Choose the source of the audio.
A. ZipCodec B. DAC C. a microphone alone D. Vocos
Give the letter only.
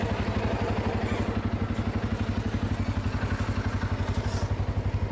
C